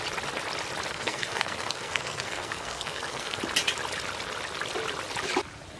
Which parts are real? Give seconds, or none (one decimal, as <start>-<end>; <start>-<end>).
0.0-0.9; 3.4-5.8